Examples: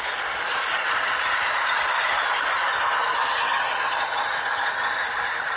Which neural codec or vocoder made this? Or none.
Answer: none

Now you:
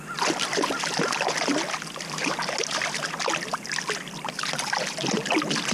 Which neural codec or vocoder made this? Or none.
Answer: none